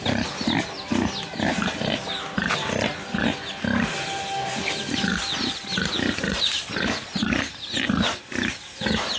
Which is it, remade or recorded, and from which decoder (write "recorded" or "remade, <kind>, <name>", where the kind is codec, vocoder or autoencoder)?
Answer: recorded